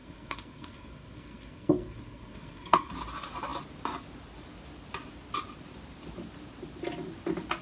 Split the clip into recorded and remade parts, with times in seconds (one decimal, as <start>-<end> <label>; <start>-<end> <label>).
0.0-2.9 remade; 2.9-7.6 recorded